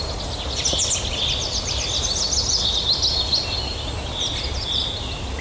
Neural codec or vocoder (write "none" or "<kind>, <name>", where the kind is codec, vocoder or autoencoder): none